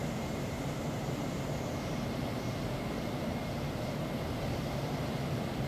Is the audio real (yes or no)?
no